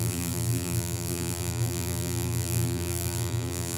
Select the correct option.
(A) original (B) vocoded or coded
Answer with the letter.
B